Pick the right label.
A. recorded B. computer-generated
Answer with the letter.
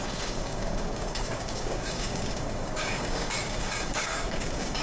B